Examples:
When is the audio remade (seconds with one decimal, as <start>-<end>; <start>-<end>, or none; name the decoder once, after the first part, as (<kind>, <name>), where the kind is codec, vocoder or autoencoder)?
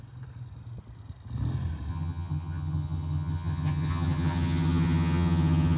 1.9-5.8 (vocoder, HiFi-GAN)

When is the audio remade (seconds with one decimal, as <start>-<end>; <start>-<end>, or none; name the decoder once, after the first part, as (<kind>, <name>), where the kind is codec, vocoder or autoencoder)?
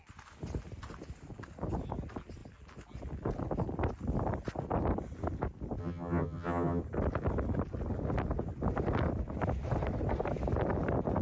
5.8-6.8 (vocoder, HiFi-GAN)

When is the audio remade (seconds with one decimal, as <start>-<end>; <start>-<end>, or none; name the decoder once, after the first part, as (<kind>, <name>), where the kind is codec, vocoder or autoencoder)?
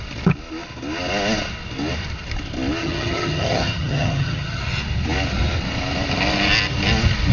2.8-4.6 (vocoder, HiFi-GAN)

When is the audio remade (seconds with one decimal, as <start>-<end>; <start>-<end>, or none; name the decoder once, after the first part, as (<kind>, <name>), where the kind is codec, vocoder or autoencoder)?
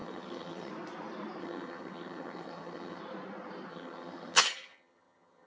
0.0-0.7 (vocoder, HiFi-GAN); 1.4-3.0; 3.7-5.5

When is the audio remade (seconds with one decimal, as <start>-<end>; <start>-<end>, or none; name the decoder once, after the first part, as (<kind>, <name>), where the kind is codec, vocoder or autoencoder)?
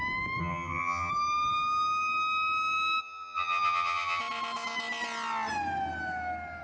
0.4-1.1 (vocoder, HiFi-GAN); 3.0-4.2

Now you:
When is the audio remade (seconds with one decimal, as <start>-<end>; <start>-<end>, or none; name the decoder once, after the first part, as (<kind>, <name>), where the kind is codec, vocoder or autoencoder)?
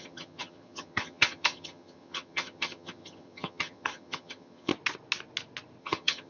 0.0-4.7 (vocoder, HiFi-GAN); 5.8-6.3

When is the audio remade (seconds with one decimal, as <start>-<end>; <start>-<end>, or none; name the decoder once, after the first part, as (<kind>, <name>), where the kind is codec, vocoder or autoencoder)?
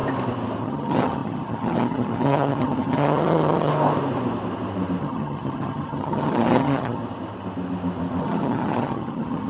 0.6-3.7 (vocoder, HiFi-GAN); 5.0-7.0; 8.2-9.5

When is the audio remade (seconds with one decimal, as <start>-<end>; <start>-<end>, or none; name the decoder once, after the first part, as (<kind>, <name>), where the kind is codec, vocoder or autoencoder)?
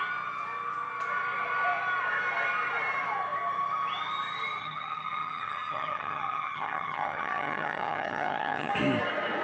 4.6-8.7 (vocoder, HiFi-GAN)